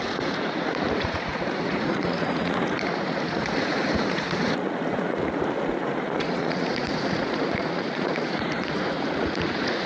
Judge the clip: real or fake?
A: fake